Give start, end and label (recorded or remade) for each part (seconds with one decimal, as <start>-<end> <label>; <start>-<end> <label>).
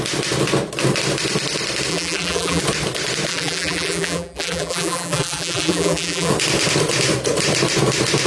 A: 0.0-1.9 recorded; 1.9-2.6 remade; 2.6-3.3 recorded; 3.3-6.3 remade; 6.3-8.3 recorded